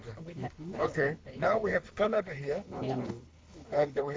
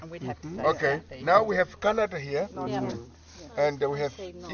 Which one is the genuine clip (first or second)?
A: second